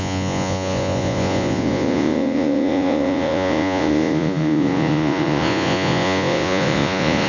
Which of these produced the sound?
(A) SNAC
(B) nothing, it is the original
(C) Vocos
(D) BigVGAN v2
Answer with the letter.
C